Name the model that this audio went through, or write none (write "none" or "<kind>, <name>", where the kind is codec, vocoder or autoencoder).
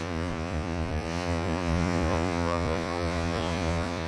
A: vocoder, Vocos